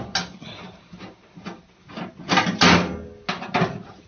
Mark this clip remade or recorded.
recorded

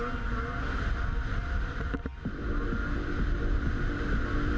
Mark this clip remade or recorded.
recorded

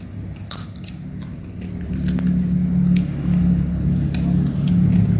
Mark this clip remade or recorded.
recorded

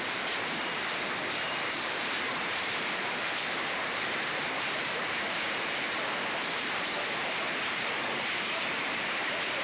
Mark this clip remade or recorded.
remade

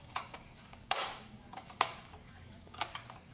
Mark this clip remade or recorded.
remade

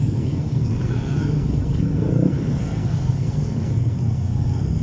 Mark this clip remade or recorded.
remade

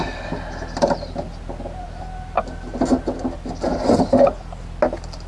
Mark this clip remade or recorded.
recorded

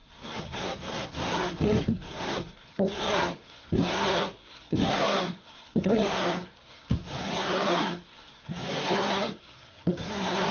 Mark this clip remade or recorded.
remade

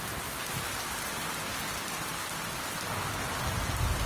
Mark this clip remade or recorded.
recorded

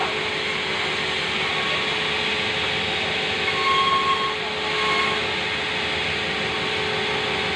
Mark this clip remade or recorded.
recorded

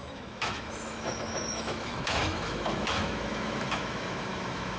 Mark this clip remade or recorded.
remade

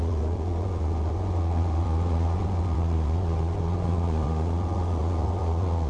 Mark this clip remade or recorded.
remade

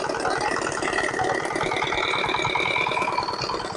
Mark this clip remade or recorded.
recorded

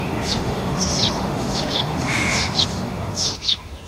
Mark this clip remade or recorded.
remade